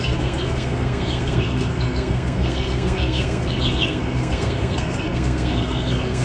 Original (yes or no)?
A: no